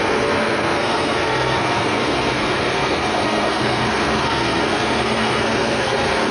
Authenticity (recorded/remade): remade